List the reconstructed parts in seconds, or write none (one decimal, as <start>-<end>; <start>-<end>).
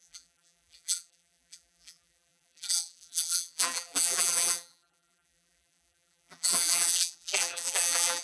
0.0-8.2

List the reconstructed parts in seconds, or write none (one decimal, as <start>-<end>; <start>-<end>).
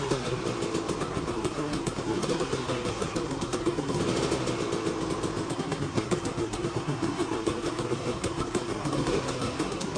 0.0-0.4; 1.0-4.0; 5.5-10.0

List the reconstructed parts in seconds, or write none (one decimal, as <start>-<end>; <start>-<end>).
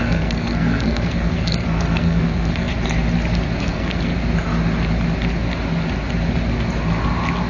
0.0-2.7; 3.6-4.1